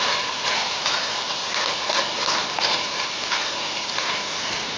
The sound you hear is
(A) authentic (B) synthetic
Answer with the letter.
A